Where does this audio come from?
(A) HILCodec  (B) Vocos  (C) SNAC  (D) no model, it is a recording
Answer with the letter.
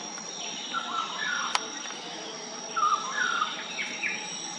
D